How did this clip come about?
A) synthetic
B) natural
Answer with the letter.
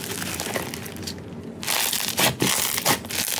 B